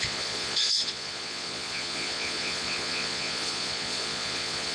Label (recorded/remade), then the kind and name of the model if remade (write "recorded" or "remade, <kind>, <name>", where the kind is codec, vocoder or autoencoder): remade, vocoder, Vocos